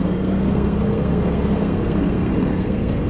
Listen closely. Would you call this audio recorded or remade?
remade